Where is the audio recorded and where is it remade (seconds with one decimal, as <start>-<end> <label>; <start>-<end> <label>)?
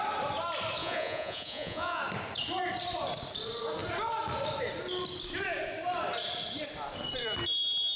0.0-0.8 recorded; 0.8-2.0 remade; 2.0-8.0 recorded